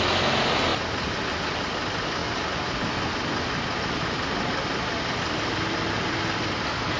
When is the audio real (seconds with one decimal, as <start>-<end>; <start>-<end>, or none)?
0.0-7.0